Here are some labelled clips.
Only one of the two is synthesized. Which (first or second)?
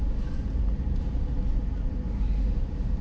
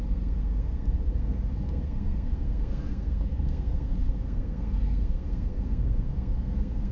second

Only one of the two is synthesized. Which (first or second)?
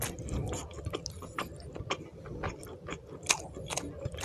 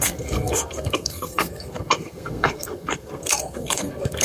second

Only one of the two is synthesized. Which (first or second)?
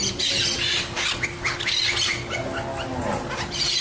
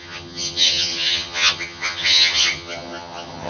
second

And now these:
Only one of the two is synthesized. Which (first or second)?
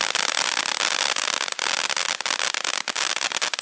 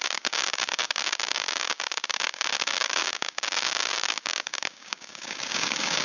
second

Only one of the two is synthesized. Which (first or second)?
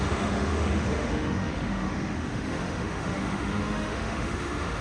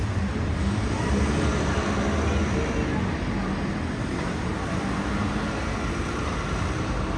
first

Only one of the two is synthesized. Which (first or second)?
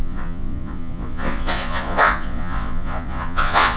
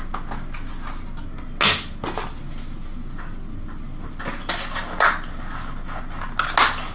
first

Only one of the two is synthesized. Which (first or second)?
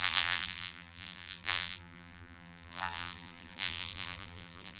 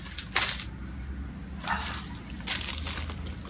first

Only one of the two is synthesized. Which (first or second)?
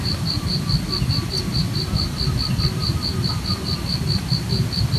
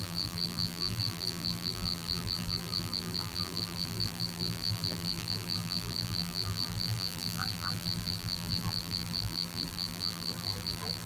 second